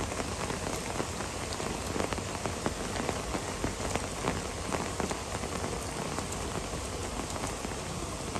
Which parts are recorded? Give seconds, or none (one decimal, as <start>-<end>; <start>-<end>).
0.0-8.4